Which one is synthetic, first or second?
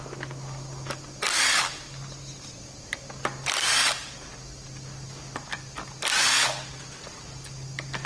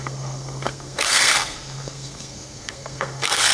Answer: second